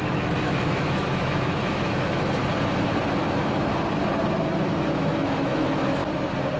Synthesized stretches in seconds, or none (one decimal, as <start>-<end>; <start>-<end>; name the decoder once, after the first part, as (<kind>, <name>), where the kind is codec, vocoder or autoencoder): 0.0-2.4 (autoencoder, DAC-VAE); 3.2-3.7; 4.3-6.0